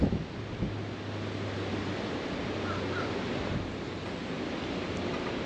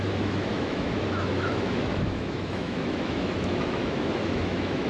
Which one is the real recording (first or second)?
first